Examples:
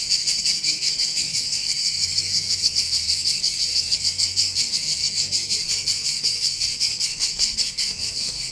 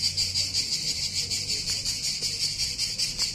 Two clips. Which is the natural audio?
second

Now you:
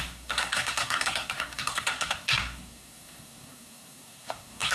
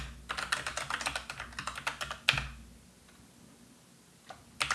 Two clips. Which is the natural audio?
second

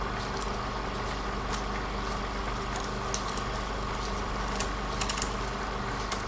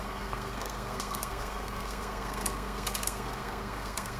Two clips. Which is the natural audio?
first